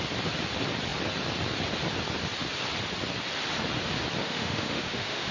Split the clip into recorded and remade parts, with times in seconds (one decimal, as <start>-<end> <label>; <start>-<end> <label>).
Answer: 0.0-4.2 recorded; 4.2-5.3 remade